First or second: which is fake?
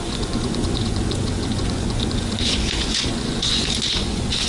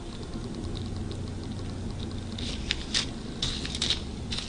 first